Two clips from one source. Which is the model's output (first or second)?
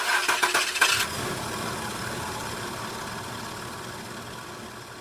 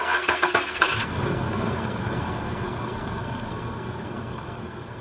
second